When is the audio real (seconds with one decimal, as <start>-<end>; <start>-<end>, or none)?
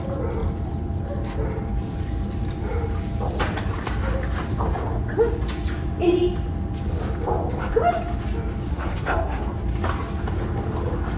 0.0-8.7; 9.4-11.2